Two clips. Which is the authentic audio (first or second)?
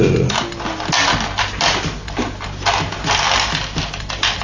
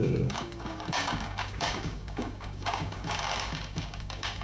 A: first